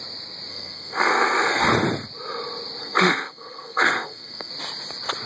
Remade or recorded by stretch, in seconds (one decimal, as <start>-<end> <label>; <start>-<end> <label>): 0.0-0.5 recorded; 0.5-1.6 remade; 1.6-2.8 recorded; 2.8-4.5 remade; 4.5-5.3 recorded